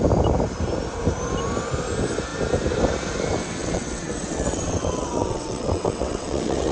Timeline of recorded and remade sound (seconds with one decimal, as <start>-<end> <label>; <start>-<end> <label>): 0.0-3.4 recorded; 3.4-6.7 remade